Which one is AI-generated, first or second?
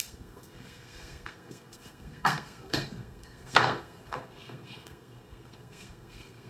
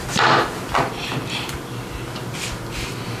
first